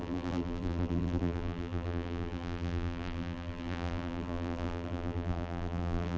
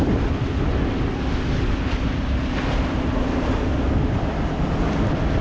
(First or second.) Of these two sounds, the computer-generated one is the first